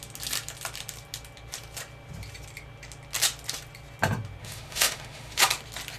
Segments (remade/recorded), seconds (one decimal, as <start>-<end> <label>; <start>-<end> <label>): 0.0-4.4 recorded; 4.4-5.4 remade; 5.4-6.0 recorded